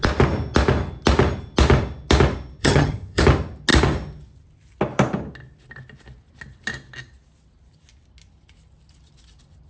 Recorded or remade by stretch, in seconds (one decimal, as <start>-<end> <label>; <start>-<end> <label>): 0.0-2.6 recorded; 2.6-3.2 remade; 3.2-9.7 recorded